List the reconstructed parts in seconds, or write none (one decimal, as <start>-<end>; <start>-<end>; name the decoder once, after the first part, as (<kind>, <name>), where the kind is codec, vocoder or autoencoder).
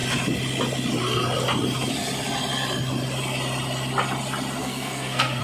4.6-5.4 (codec, SNAC)